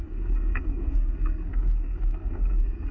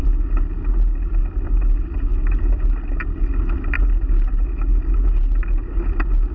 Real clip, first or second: second